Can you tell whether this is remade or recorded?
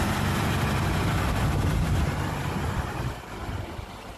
remade